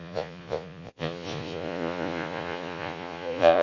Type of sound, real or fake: fake